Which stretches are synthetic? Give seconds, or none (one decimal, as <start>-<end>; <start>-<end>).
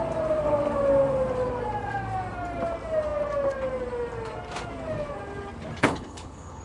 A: 5.8-6.6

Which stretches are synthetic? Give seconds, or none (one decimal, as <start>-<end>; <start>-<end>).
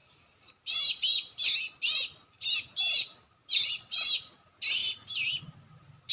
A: none